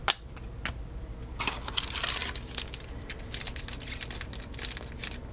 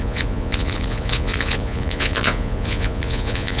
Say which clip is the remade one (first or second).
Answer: second